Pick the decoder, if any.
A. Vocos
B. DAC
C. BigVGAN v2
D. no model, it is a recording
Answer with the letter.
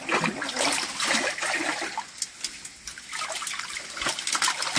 D